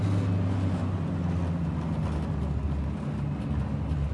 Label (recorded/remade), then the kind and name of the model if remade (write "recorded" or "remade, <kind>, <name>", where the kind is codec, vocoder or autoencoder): recorded